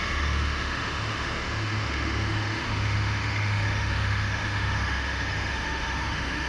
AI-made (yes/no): yes